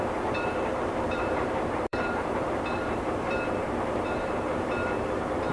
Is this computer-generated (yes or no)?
yes